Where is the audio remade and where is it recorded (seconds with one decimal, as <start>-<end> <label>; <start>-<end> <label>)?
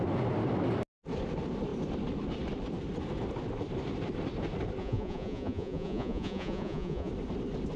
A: 0.0-4.8 recorded; 4.8-7.1 remade; 7.1-7.8 recorded